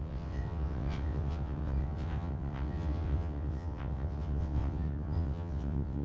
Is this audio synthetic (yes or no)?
yes